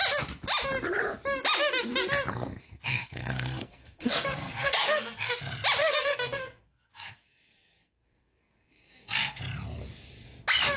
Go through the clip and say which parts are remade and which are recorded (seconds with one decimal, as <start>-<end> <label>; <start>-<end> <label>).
0.0-2.3 recorded; 2.3-5.3 remade; 5.3-5.8 recorded; 5.8-9.4 remade; 9.4-10.8 recorded